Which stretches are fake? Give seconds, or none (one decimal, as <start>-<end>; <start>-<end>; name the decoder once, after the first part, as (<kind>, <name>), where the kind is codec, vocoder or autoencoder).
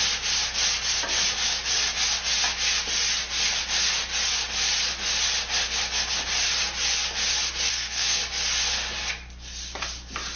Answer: 7.7-8.2 (codec, SNAC)